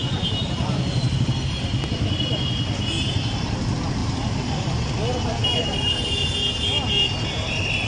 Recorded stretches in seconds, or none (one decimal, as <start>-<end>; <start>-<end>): 0.0-4.0; 4.8-7.9